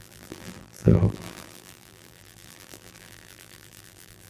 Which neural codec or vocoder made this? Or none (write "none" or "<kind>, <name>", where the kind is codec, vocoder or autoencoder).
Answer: vocoder, BigVGAN v2